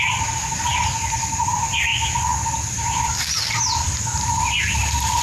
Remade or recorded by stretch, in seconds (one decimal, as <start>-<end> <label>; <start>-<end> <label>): 0.0-5.2 recorded